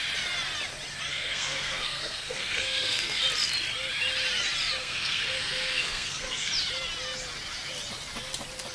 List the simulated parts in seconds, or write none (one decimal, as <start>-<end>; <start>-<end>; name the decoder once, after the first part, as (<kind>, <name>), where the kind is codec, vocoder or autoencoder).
1.1-3.2 (codec, SNAC); 4.8-6.5